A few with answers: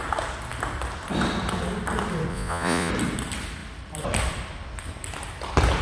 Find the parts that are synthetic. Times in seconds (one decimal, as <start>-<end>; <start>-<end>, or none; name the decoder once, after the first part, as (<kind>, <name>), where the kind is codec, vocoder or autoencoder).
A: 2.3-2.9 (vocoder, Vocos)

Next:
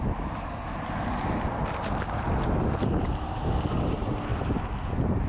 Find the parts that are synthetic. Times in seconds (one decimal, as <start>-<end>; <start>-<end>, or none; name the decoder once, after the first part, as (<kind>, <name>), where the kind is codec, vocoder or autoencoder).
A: none

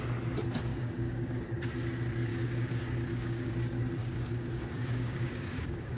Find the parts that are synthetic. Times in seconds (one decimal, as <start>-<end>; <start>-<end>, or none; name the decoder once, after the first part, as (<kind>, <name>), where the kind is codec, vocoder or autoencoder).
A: 0.7-1.4 (codec, DAC); 2.3-3.5; 4.0-6.0

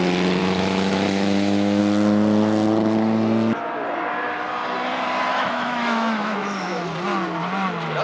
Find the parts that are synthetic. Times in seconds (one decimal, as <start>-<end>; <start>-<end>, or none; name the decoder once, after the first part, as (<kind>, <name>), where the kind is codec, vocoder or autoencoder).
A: 0.4-1.8 (autoencoder, DAC-VAE); 5.3-6.8

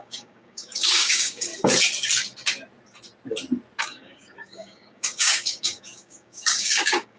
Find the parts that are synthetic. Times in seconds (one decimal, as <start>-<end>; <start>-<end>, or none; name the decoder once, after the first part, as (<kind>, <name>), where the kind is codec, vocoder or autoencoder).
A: 0.0-1.5 (codec, DAC); 3.8-7.2